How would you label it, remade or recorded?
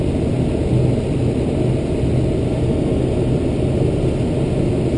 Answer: recorded